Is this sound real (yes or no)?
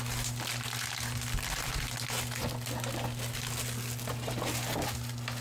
yes